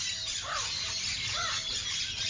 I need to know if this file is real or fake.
real